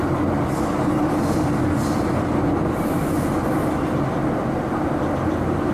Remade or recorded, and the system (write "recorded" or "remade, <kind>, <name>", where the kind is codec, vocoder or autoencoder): recorded